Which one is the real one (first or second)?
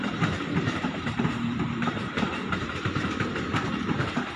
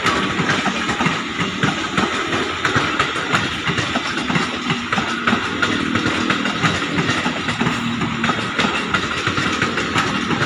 second